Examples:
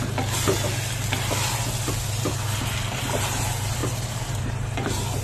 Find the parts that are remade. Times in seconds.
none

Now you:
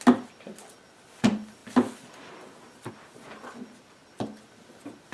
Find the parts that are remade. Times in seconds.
none

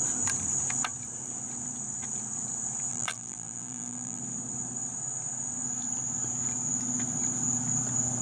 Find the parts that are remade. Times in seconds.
2.9-4.2 (vocoder, BigVGAN v2)

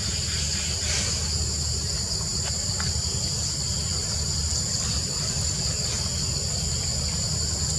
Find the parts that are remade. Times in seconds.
none

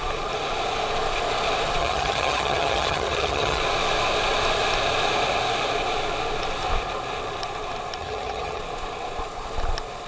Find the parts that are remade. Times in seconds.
1.8-3.6 (vocoder, HiFi-GAN); 8.0-8.6